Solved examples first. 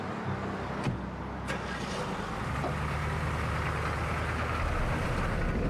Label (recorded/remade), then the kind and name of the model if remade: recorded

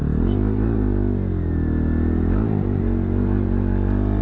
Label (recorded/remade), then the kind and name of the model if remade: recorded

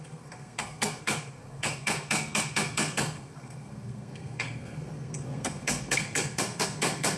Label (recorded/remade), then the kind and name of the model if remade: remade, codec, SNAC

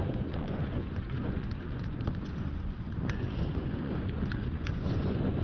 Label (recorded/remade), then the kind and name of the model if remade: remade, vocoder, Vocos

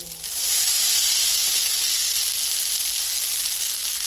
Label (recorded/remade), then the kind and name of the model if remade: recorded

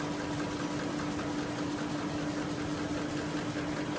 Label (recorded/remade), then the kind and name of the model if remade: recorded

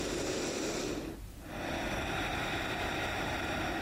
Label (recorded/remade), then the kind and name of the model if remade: recorded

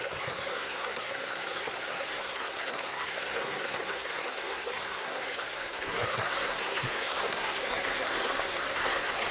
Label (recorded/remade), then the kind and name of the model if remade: remade, codec, SNAC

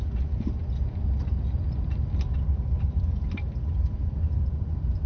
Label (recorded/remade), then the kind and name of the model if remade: recorded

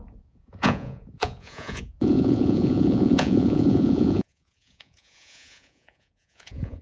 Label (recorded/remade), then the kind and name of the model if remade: remade, vocoder, Vocos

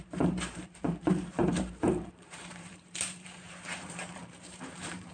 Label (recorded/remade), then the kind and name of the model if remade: remade, vocoder, BigVGAN v2